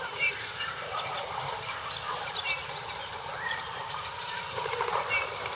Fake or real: fake